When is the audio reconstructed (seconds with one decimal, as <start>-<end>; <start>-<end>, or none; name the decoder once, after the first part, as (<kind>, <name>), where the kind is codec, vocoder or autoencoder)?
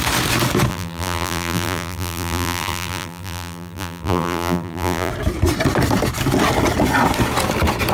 0.7-5.1 (vocoder, BigVGAN v2)